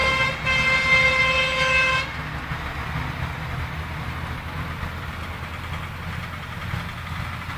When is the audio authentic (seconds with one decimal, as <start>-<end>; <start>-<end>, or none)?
1.2-7.6